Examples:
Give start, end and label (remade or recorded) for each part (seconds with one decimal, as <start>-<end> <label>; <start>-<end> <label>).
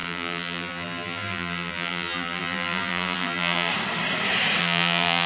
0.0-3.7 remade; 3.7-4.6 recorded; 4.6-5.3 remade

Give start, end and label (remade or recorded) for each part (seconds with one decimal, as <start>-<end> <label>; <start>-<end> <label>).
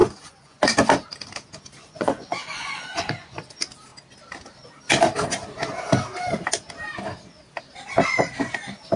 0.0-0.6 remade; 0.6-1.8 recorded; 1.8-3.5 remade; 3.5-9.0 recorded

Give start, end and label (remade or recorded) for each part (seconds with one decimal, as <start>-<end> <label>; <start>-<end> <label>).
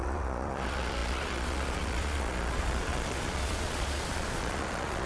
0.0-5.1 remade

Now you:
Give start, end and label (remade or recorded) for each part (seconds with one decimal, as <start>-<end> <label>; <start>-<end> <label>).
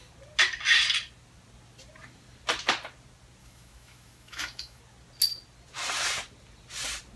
0.0-3.4 recorded; 3.4-4.8 remade; 4.8-7.2 recorded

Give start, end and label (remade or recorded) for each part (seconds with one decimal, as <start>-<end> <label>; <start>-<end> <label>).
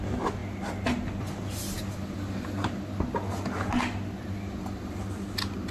0.0-5.7 recorded